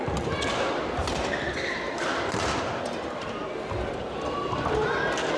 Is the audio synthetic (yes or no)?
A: no